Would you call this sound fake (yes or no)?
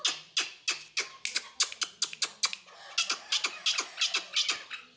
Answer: no